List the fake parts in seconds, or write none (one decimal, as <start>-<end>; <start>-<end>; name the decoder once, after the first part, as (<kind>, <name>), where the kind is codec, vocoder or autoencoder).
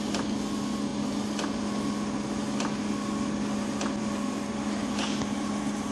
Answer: none